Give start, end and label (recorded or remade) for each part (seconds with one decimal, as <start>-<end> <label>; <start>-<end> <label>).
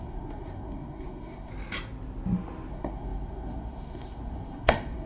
0.0-1.5 remade; 1.5-2.7 recorded; 2.7-5.1 remade